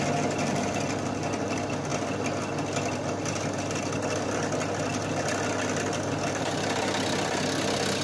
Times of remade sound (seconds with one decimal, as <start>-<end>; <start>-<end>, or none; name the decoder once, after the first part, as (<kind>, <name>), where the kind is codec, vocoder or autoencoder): none